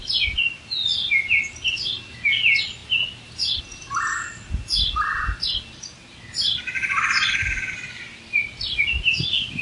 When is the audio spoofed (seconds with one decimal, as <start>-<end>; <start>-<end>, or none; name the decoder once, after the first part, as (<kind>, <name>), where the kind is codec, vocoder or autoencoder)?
none